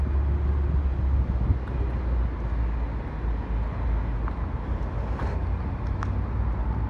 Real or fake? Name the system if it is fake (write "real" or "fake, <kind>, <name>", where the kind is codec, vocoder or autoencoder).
real